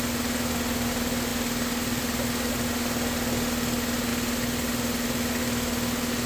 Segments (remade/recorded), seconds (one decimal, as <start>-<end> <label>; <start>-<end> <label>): 0.0-6.3 recorded